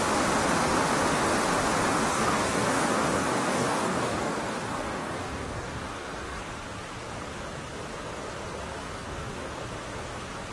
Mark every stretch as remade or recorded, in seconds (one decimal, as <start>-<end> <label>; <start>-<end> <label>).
0.0-2.1 recorded; 2.1-6.4 remade; 6.4-8.8 recorded; 8.8-9.5 remade; 9.5-10.5 recorded